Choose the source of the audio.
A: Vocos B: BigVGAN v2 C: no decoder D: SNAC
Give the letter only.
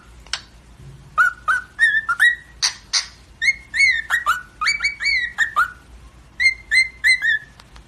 C